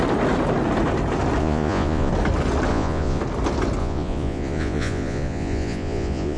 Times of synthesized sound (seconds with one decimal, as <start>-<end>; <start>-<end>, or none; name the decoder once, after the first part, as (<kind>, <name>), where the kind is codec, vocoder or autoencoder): 1.4-2.1 (vocoder, Vocos); 2.7-3.2; 3.8-6.4